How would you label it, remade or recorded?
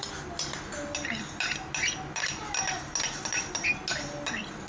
recorded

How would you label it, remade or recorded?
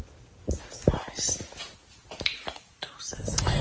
recorded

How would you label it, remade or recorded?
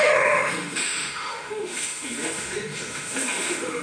remade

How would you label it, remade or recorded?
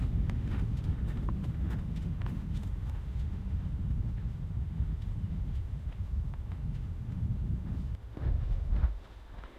remade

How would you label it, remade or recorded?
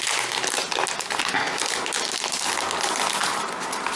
recorded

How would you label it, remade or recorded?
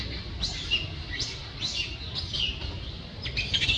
recorded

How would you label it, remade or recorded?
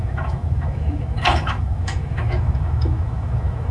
remade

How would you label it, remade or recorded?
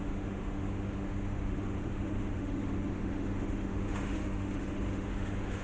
remade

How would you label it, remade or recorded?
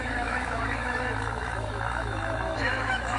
remade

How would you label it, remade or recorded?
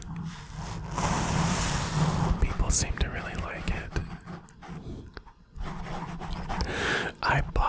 recorded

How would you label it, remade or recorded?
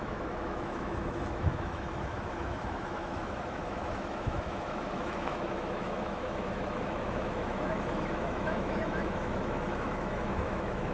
remade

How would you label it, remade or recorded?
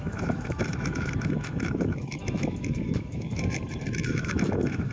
remade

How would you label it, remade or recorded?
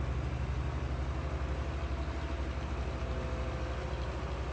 recorded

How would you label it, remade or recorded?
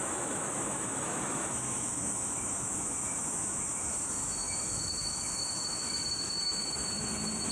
remade